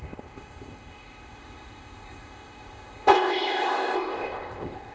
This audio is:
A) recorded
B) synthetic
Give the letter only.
B